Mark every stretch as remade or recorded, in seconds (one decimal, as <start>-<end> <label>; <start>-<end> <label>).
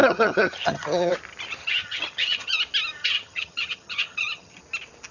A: 0.0-1.1 remade; 1.1-1.6 recorded; 1.6-2.6 remade; 2.6-3.0 recorded; 3.0-4.6 remade; 4.6-5.1 recorded